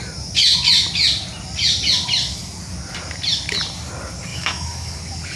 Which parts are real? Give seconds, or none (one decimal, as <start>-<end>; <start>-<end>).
0.0-4.3; 5.0-5.4